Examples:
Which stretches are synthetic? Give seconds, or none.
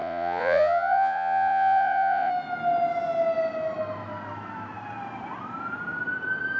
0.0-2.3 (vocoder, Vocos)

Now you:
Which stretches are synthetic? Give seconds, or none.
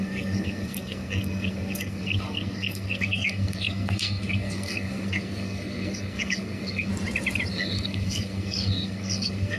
0.0-6.9 (codec, SNAC); 7.5-9.6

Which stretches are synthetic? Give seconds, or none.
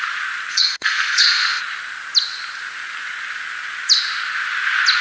0.5-1.6 (codec, SNAC)